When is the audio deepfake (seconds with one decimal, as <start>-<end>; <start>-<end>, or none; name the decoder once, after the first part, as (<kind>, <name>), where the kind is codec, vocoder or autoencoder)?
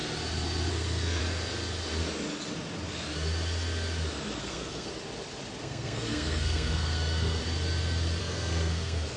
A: 0.7-1.2 (codec, SNAC); 4.4-4.9; 5.6-7.4; 8.2-9.2